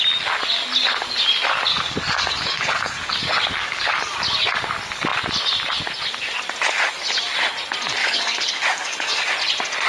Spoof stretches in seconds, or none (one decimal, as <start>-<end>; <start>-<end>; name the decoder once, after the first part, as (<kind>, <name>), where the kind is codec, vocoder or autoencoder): 1.7-4.0 (codec, DAC); 8.0-9.3